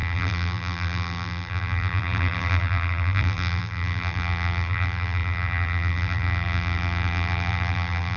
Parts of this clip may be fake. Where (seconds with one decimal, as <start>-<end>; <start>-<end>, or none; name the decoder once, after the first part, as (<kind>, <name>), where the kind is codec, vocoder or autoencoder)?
0.0-8.2 (vocoder, BigVGAN v2)